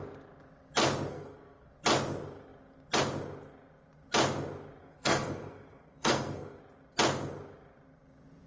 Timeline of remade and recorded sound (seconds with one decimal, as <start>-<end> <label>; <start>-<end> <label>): 0.0-1.1 recorded; 1.1-1.7 remade; 1.7-4.8 recorded; 4.8-6.6 remade; 6.6-8.5 recorded